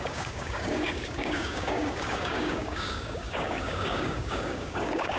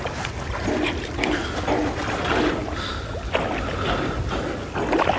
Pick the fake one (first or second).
first